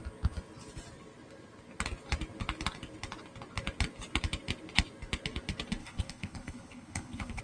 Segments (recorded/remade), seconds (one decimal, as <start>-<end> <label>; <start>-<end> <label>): 0.0-5.8 recorded; 5.8-7.4 remade